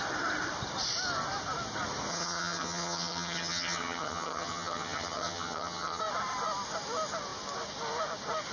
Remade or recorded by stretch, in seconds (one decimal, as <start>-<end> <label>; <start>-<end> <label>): 0.0-2.1 recorded; 2.1-6.0 remade; 6.0-8.5 recorded